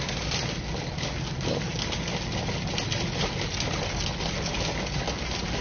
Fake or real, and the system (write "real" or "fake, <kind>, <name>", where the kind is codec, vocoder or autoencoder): real